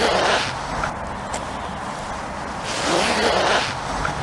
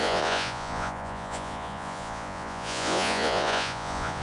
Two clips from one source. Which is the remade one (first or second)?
second